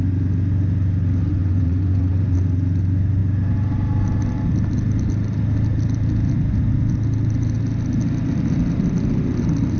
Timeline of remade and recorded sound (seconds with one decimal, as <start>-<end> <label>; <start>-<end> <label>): 0.0-1.3 recorded; 1.3-2.0 remade; 2.0-9.8 recorded